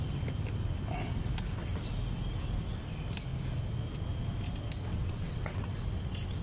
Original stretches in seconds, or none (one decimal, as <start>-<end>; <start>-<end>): 0.0-4.9; 5.7-6.4